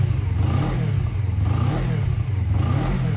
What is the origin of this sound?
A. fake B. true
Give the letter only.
B